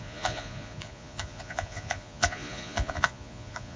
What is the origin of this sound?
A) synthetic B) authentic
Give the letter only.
A